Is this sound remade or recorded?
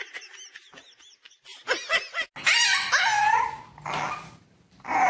recorded